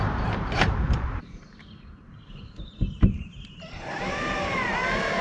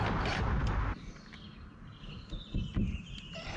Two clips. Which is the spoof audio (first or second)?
first